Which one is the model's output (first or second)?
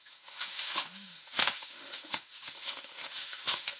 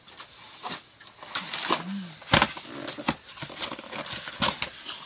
first